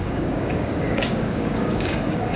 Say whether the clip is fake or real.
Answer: fake